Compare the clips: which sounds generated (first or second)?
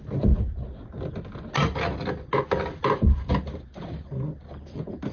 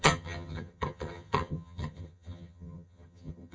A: second